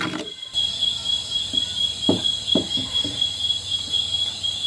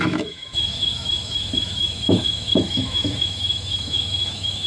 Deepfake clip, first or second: second